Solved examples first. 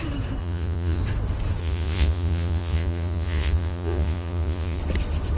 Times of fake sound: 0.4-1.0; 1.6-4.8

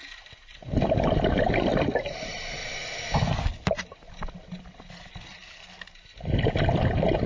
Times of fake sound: 1.8-2.6

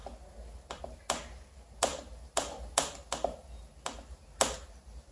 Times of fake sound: none

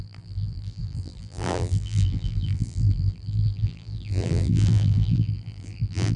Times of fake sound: 0.0-6.2